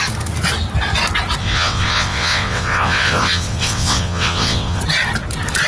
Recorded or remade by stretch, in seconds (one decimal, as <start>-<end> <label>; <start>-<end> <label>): 0.0-1.4 recorded; 1.4-4.8 remade; 4.8-5.7 recorded